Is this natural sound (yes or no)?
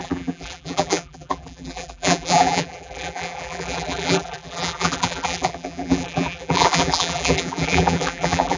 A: no